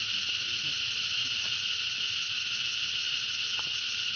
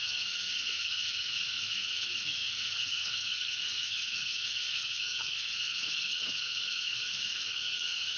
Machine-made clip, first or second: second